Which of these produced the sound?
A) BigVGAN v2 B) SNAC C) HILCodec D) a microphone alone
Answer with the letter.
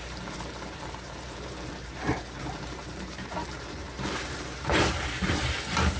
A